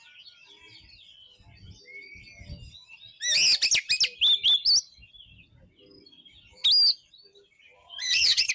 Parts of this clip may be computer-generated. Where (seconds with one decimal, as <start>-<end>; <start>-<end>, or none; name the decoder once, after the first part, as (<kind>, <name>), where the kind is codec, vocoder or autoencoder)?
7.8-8.5 (vocoder, HiFi-GAN)